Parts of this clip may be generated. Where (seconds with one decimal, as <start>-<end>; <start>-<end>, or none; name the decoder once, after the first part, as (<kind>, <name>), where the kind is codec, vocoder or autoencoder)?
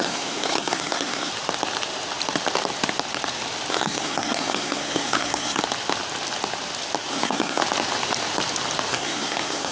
0.0-1.3 (codec, SNAC); 3.7-5.6; 7.1-7.6; 8.9-9.7